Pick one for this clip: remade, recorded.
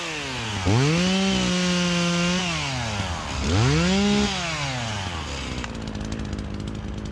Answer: recorded